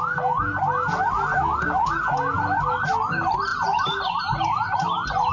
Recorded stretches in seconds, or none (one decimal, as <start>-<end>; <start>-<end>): 0.0-5.3